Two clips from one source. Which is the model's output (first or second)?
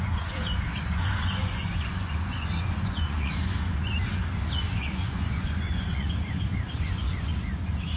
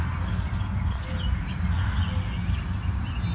first